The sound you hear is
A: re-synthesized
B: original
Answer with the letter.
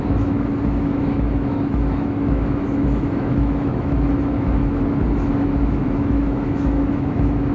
A